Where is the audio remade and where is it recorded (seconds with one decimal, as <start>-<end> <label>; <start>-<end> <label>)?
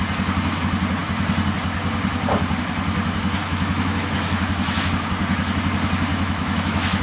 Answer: 0.0-3.4 recorded; 3.4-4.9 remade; 4.9-6.1 recorded; 6.1-7.0 remade